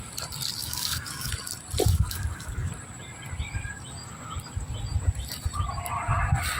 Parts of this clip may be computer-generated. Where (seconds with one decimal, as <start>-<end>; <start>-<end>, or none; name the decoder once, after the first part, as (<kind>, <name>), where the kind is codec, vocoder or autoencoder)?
0.6-1.3 (codec, DAC); 1.8-2.7